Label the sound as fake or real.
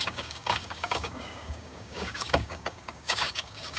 fake